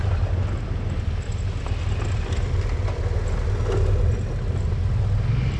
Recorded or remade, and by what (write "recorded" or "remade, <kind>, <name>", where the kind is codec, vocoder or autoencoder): recorded